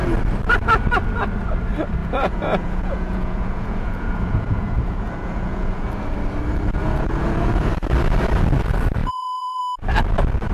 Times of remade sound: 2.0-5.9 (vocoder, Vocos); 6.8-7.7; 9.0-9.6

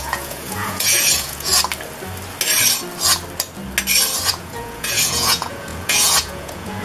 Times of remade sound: 0.0-1.5 (vocoder, Vocos); 4.3-6.8

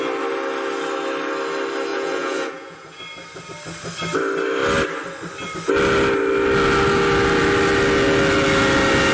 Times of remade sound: 1.9-3.0 (vocoder, Vocos)